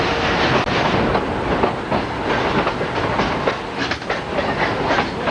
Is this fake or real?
real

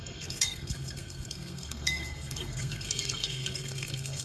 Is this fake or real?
fake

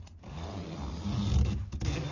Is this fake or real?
real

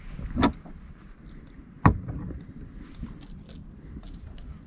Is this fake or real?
real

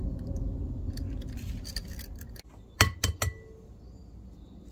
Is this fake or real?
real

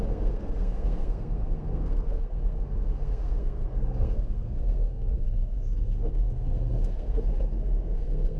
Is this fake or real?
fake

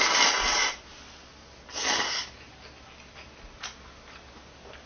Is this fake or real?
real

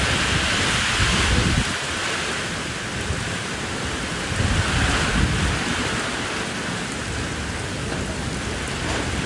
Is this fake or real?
real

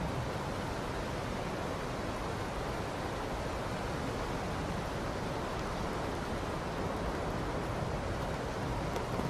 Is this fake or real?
real